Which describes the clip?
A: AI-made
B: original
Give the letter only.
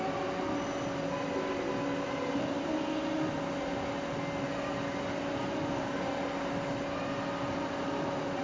B